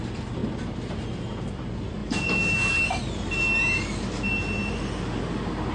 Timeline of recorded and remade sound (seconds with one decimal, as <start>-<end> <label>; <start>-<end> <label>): 0.0-5.7 recorded